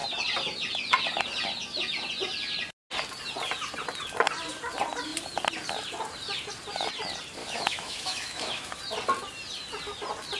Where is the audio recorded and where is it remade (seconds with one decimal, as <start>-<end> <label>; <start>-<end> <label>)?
0.0-7.4 recorded; 7.4-8.8 remade; 8.8-10.4 recorded